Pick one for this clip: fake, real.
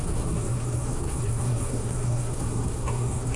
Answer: fake